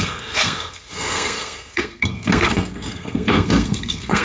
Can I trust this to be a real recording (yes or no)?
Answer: no